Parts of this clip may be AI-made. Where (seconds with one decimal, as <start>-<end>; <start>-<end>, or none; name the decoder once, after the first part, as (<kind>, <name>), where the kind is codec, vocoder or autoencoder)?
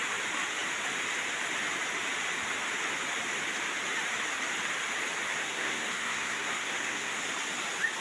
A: 5.4-7.2 (codec, SNAC)